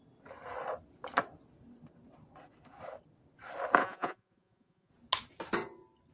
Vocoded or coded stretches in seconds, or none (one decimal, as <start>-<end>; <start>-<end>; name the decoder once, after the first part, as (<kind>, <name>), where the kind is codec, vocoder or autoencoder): 3.8-4.9 (vocoder, Vocos)